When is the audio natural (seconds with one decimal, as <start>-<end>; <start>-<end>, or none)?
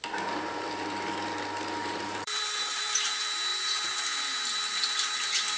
0.0-1.8; 3.1-5.6